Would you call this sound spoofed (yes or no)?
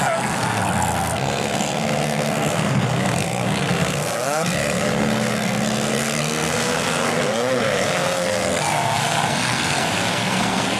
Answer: yes